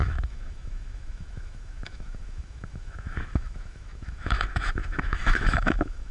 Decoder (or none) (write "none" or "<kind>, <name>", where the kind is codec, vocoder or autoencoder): autoencoder, DAC-VAE